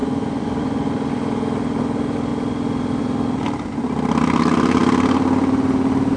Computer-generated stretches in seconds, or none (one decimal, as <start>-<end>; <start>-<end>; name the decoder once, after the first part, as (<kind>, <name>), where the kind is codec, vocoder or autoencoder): 0.0-1.1 (vocoder, Vocos)